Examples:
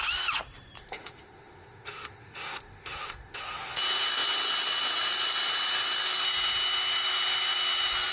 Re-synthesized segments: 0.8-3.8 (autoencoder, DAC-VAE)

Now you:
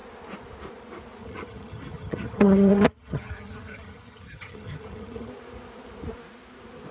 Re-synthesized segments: 1.2-5.3 (vocoder, HiFi-GAN)

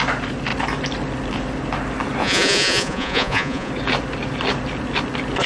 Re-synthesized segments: 2.2-3.7 (vocoder, Vocos)

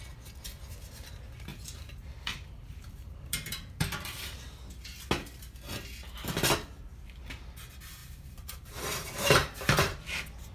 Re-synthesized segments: 1.5-4.4 (vocoder, BigVGAN v2); 8.0-10.0

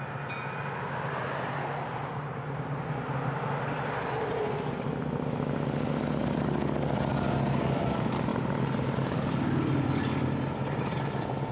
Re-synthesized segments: none

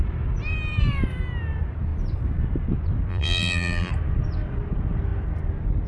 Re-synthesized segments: 3.1-3.9 (vocoder, BigVGAN v2)

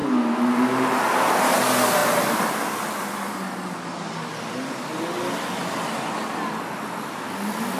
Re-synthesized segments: none